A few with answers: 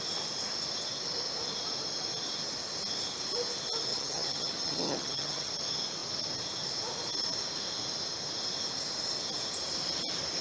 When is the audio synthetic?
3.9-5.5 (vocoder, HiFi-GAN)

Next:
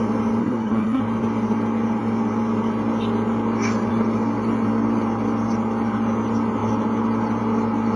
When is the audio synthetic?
0.4-1.0 (codec, SNAC)

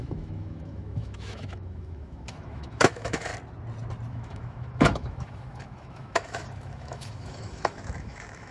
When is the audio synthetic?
0.0-3.3 (autoencoder, DAC-VAE); 4.1-8.5